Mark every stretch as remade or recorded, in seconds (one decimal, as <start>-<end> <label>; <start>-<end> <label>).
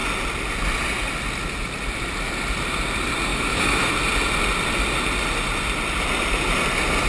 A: 0.0-3.3 recorded; 3.3-3.9 remade; 3.9-7.1 recorded